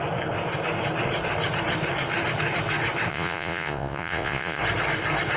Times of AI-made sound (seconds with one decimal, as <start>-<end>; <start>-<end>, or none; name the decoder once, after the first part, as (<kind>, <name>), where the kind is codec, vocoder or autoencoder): 3.1-4.6 (vocoder, Vocos)